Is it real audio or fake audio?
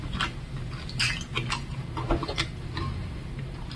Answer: real